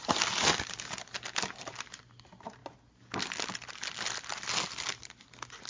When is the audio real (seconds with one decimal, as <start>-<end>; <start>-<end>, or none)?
0.0-5.7